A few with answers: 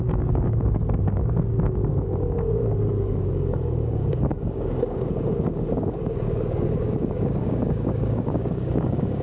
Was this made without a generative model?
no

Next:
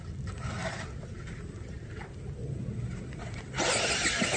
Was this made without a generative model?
yes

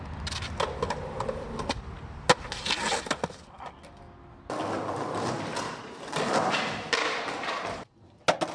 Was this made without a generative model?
yes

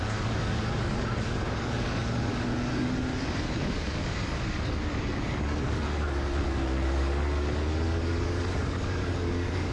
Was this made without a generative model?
no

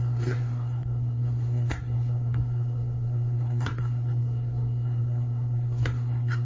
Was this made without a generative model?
no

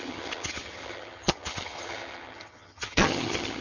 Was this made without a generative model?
no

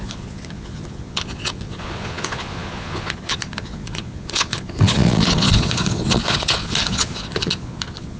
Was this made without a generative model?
no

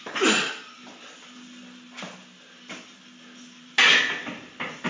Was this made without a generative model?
yes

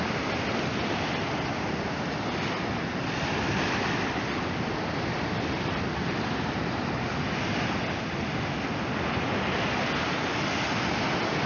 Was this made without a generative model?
yes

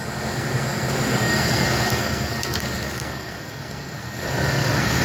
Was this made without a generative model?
no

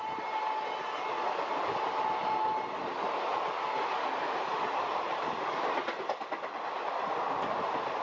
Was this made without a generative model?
yes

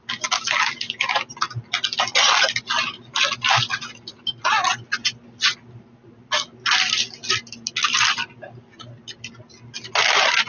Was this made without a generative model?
yes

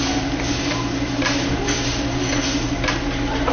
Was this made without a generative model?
yes